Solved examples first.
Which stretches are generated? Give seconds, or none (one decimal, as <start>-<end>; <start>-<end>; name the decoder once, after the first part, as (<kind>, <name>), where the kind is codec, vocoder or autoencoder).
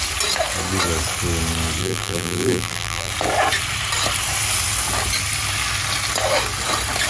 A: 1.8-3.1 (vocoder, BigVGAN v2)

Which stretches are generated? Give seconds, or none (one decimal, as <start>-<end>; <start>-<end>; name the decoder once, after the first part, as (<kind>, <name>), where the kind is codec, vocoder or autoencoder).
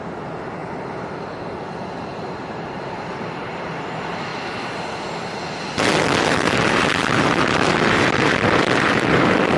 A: 0.0-0.6 (vocoder, BigVGAN v2); 1.7-4.3; 6.3-9.6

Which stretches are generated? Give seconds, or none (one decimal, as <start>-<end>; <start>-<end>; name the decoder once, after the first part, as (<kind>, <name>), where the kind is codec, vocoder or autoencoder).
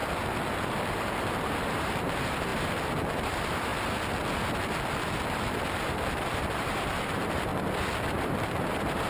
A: 0.7-2.5 (vocoder, BigVGAN v2); 3.1-3.7; 5.7-7.5; 8.1-9.1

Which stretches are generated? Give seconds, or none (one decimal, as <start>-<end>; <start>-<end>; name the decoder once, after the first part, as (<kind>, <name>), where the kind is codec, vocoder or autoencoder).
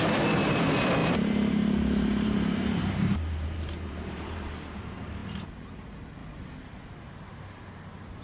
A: 1.0-4.5 (vocoder, BigVGAN v2)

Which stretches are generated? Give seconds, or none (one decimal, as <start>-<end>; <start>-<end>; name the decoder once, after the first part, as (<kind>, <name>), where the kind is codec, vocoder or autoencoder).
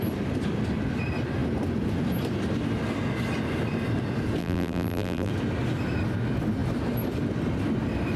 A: 4.4-5.3 (vocoder, BigVGAN v2)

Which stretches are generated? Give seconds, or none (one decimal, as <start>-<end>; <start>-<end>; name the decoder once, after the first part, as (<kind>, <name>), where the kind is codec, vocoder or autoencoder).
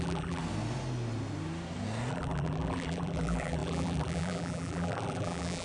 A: 0.0-0.4 (vocoder, BigVGAN v2); 2.1-5.6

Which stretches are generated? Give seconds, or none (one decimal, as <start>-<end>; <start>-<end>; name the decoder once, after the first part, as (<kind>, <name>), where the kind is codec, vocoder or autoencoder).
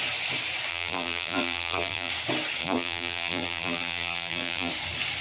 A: 0.7-2.1 (vocoder, BigVGAN v2); 2.6-4.7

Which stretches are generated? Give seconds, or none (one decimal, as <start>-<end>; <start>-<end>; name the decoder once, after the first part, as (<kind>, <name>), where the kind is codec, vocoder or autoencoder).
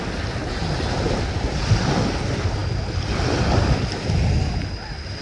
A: none